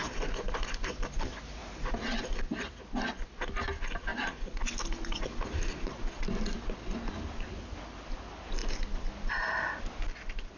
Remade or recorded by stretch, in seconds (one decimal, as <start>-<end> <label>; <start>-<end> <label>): 0.0-1.6 recorded; 1.6-2.3 remade; 2.3-10.6 recorded